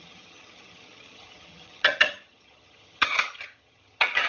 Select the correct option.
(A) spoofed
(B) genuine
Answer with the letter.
A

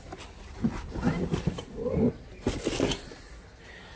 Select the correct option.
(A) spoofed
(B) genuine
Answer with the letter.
B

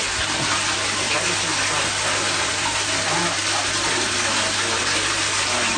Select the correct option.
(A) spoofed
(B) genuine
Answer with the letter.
B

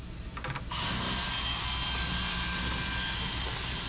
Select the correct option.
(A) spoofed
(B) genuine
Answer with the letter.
B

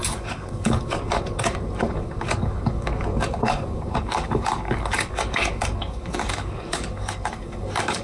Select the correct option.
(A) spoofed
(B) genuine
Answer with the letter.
A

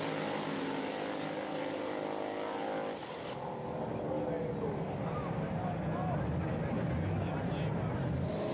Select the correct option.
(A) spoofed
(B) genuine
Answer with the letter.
B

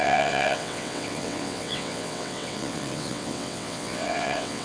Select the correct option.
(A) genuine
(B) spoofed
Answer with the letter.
B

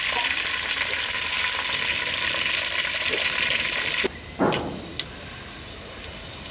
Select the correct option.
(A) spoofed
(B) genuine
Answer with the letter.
B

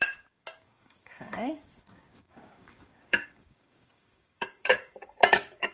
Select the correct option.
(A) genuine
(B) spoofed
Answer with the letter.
B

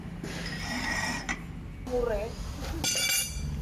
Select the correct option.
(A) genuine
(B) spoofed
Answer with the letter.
A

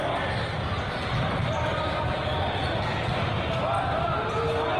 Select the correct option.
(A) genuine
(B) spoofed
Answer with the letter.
A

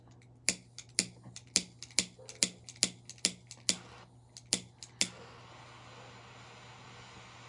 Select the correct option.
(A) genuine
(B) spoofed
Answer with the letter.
A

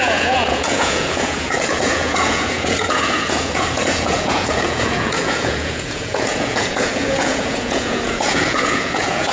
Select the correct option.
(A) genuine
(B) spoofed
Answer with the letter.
B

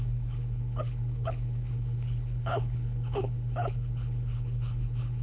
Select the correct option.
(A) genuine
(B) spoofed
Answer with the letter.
B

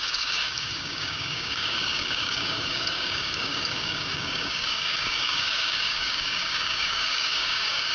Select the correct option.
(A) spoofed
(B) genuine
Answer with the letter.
A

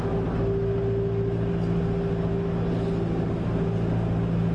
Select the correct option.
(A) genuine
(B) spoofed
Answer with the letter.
A